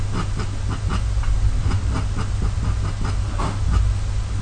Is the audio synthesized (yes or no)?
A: no